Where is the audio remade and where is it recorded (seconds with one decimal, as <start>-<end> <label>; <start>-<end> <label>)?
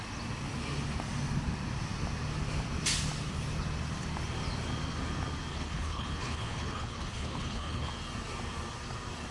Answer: 0.0-5.5 recorded; 5.5-7.9 remade; 7.9-9.3 recorded